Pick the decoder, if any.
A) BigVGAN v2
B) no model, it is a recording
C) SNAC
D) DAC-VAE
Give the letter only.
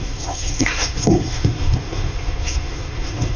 C